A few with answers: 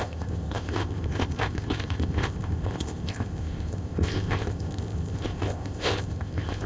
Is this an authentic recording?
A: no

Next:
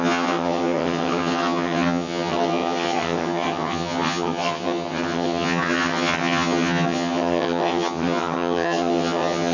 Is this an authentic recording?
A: no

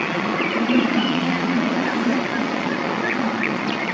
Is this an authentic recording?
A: no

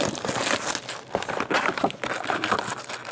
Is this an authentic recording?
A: yes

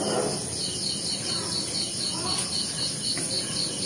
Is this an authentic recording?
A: yes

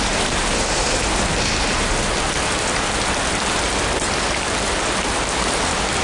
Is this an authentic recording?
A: yes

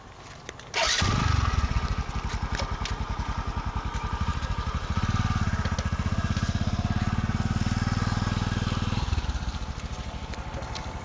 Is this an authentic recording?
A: yes